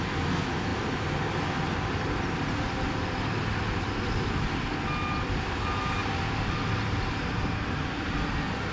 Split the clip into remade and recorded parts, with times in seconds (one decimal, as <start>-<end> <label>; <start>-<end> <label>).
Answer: 0.0-8.7 recorded